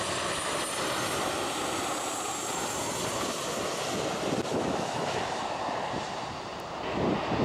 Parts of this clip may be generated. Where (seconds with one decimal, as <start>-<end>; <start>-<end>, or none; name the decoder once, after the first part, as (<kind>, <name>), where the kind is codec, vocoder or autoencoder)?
4.5-5.4 (autoencoder, DAC-VAE)